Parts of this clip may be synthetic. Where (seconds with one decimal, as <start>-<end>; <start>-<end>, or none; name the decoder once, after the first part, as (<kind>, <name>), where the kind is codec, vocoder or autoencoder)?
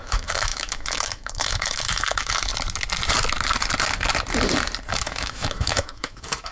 0.0-2.5 (autoencoder, DAC-VAE); 4.9-6.5